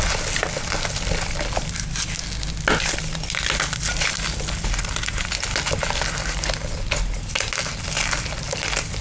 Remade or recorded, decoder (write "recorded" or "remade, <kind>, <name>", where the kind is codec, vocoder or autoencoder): recorded